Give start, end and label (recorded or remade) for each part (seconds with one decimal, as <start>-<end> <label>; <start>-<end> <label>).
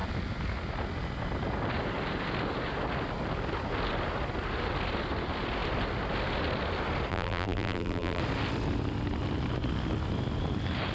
0.0-7.1 recorded; 7.1-8.2 remade; 8.2-10.9 recorded